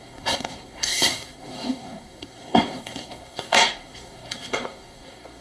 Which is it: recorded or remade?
remade